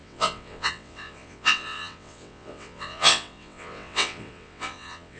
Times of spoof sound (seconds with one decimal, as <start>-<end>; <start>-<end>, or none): 0.0-5.2